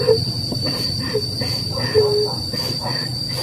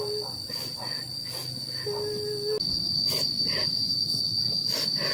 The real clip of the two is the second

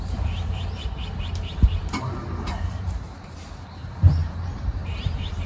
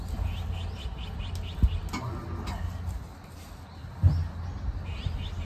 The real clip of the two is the second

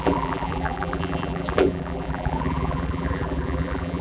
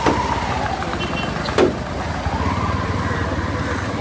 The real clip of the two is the second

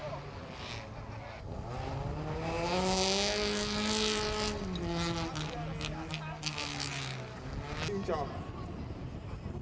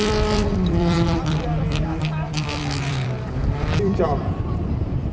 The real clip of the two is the first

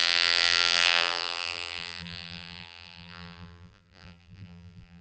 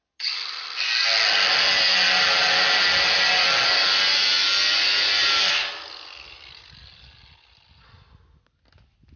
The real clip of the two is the second